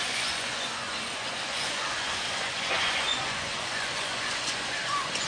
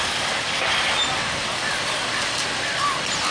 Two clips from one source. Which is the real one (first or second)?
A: second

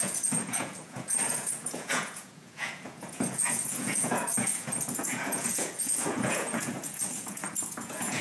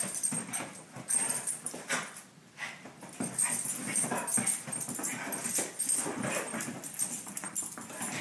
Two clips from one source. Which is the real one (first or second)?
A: second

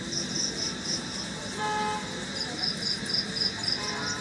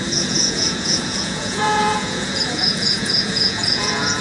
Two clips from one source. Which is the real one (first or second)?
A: first